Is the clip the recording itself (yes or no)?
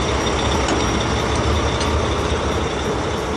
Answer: yes